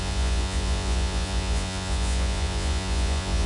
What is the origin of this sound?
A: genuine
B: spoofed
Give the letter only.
B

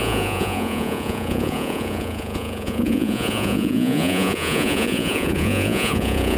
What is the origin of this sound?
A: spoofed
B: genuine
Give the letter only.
A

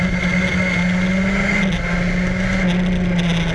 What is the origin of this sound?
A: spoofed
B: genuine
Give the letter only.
B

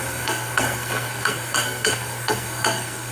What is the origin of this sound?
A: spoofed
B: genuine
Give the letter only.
A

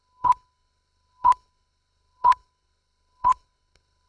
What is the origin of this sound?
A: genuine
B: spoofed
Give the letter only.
B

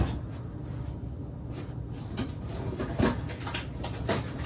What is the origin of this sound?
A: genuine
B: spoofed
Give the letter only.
A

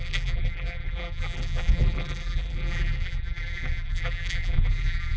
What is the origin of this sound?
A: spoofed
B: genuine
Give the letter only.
A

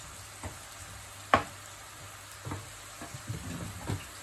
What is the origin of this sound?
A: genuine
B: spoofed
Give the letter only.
A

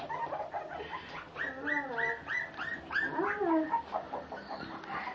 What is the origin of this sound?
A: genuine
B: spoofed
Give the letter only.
A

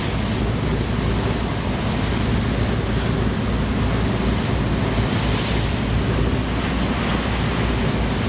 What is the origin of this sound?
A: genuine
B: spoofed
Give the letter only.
A